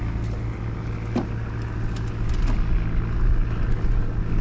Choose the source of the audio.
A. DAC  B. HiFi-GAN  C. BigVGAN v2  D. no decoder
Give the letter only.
D